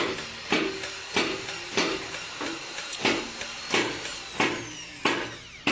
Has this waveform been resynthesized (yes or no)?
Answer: no